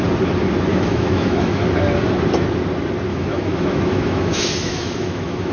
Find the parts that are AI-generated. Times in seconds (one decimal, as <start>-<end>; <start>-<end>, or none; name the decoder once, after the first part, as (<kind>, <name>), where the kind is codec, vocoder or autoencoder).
0.7-1.6 (autoencoder, DAC-VAE); 3.1-5.5